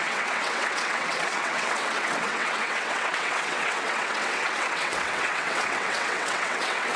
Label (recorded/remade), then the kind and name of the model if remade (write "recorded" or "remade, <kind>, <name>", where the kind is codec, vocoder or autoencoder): remade, vocoder, WaveNeXt